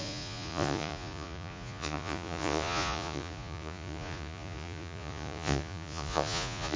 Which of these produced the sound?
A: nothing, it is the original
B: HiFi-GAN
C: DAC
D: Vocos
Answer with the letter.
D